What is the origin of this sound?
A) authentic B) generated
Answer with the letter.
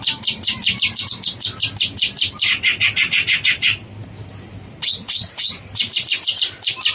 B